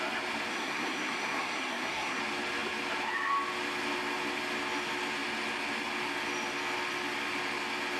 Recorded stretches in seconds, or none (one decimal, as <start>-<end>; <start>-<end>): 0.0-0.5; 2.2-8.0